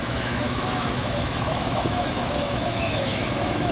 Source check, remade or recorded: remade